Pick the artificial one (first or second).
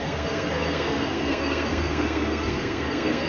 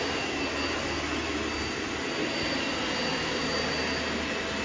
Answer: first